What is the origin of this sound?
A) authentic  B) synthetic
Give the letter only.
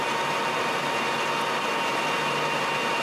A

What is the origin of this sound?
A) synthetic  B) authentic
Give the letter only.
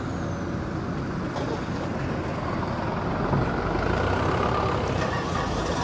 B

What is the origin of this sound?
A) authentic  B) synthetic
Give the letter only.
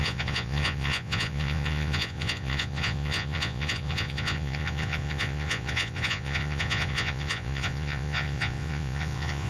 B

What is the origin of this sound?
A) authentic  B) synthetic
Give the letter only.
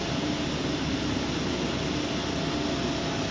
A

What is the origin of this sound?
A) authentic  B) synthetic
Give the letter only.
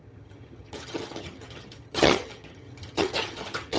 B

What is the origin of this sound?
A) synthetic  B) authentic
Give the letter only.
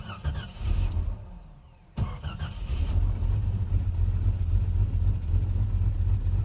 B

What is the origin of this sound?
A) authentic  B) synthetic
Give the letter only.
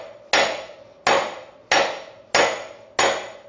A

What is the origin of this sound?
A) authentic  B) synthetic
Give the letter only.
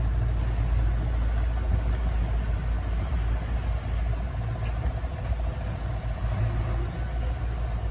A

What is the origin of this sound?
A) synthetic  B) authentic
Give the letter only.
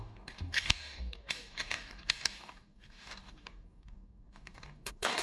A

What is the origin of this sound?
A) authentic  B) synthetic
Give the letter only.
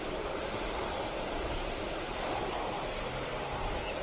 B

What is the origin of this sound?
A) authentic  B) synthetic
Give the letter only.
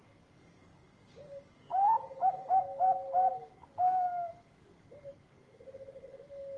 B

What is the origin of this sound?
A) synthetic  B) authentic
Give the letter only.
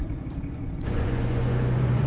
A